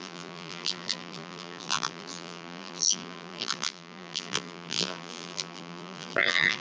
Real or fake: fake